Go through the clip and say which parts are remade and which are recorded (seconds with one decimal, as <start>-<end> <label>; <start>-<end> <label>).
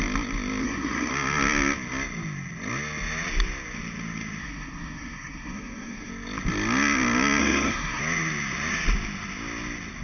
0.0-0.6 recorded; 0.6-1.1 remade; 1.1-4.4 recorded; 4.4-6.1 remade; 6.1-7.4 recorded; 7.4-8.0 remade; 8.0-10.0 recorded